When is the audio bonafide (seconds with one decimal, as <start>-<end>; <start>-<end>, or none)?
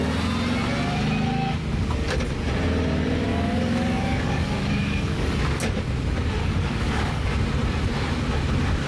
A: 0.0-3.3; 5.4-6.4; 7.3-8.9